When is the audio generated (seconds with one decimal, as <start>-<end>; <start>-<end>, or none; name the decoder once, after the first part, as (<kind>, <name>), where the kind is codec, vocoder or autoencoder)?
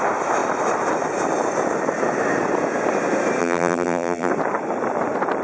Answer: 3.4-4.3 (vocoder, BigVGAN v2)